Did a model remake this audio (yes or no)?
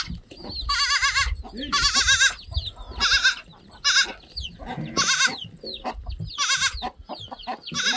no